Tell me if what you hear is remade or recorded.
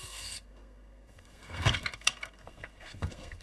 remade